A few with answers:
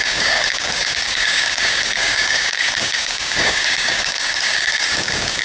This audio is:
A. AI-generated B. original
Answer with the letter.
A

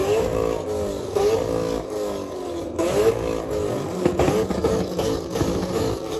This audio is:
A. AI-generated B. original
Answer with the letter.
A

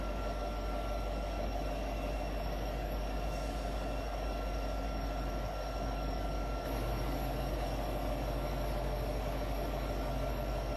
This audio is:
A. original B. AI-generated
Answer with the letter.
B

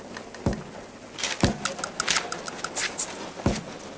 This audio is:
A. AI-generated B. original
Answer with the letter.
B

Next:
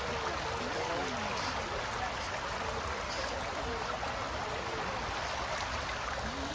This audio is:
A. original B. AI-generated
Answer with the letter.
A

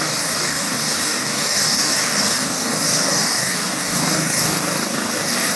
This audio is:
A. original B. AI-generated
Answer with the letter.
B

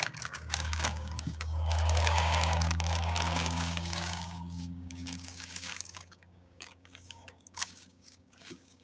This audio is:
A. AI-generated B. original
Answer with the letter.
A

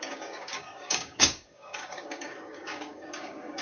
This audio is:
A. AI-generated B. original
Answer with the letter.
A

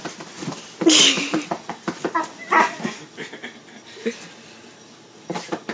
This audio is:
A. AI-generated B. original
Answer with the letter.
B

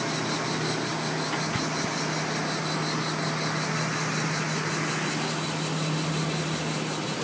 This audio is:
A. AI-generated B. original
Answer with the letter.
B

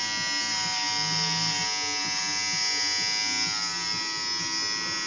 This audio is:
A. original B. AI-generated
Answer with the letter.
A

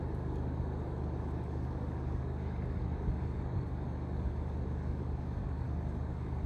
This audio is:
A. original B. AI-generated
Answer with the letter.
B